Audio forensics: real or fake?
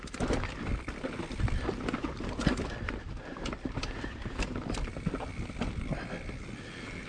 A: real